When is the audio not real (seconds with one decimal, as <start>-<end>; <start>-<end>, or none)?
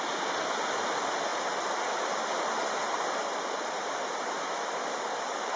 none